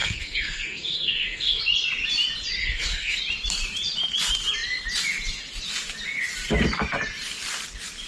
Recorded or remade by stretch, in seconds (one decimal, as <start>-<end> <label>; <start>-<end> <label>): 0.0-1.6 remade; 1.6-2.6 recorded; 2.6-3.2 remade; 3.2-8.1 recorded